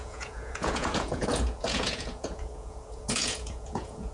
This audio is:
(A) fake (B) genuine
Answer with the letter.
A